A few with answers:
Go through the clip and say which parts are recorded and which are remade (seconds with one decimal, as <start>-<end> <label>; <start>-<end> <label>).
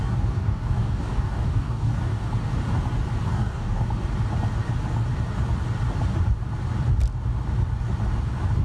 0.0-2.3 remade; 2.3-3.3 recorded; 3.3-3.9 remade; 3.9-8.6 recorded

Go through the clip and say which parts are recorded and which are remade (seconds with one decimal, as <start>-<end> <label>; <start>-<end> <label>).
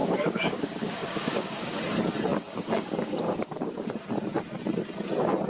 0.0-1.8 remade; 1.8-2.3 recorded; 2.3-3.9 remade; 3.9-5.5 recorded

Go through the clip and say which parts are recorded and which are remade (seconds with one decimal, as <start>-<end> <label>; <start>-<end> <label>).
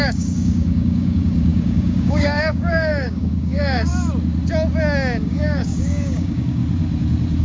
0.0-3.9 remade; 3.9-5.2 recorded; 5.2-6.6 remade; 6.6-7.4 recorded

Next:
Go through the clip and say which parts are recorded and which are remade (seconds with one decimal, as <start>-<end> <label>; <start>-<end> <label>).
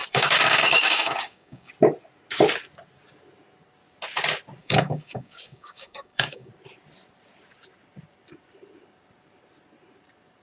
0.0-1.7 remade; 1.7-4.6 recorded; 4.6-6.5 remade; 6.5-10.4 recorded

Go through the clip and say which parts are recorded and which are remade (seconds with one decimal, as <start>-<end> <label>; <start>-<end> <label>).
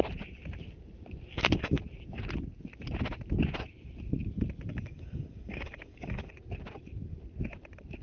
0.0-1.3 recorded; 1.3-1.8 remade; 1.8-4.7 recorded; 4.7-6.3 remade; 6.3-8.0 recorded